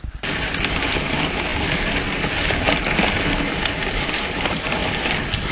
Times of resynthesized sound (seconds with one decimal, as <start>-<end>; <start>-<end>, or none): none